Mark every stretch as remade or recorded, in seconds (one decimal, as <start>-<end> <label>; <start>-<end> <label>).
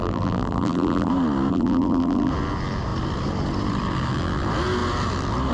0.0-1.1 remade; 1.1-1.5 recorded; 1.5-2.3 remade; 2.3-5.5 recorded